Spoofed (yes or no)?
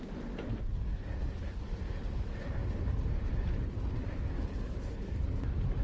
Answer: no